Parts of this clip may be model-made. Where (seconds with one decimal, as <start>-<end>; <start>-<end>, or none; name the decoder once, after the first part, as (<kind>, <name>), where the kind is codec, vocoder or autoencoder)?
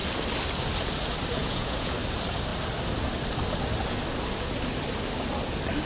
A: 1.4-1.9 (vocoder, Vocos)